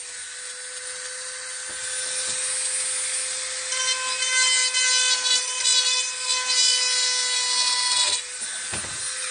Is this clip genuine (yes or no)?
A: yes